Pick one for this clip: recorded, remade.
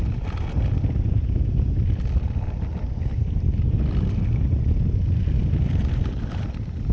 recorded